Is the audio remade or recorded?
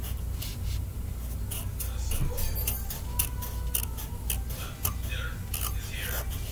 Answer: recorded